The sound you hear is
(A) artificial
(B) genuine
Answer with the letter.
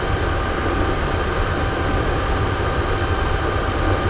B